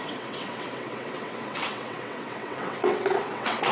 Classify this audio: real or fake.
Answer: fake